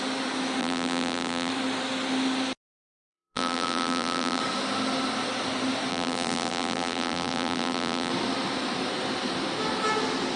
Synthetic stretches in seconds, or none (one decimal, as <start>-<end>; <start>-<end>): 0.6-1.5; 3.1-4.4; 5.9-8.1